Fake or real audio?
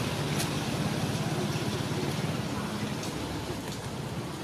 real